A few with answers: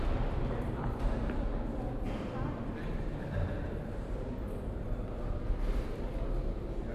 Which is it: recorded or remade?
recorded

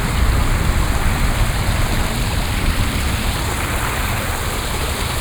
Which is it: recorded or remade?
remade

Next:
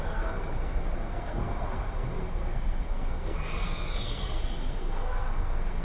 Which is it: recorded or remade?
remade